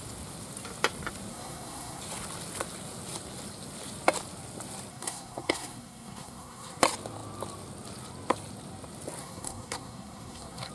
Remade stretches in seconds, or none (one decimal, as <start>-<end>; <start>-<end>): 1.3-2.0; 4.9-6.8; 9.2-10.7